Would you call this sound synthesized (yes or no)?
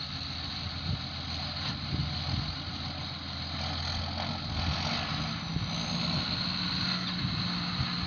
no